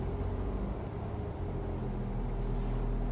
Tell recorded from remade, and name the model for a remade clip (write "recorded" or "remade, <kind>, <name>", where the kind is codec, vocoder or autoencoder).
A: recorded